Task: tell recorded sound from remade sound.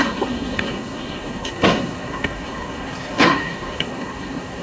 remade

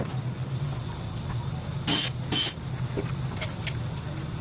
recorded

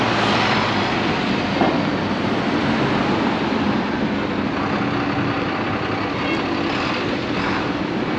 recorded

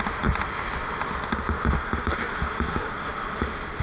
recorded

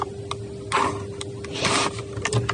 recorded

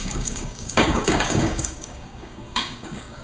remade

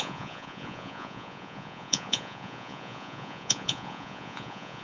remade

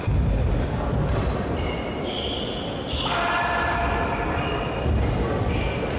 recorded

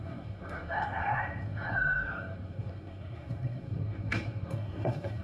remade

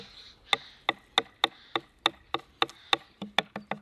recorded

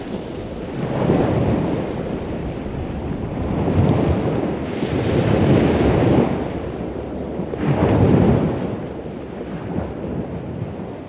recorded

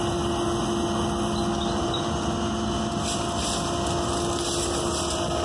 recorded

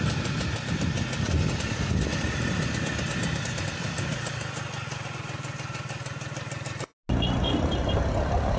recorded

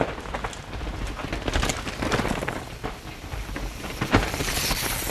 remade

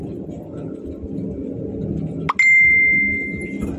recorded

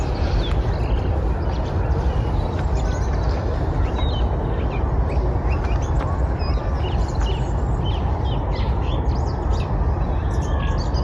recorded